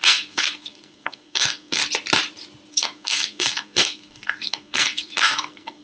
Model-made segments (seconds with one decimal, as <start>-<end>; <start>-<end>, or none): 0.0-1.8; 2.7-5.8